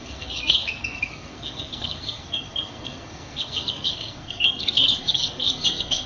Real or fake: fake